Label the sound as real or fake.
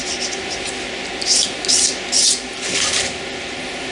real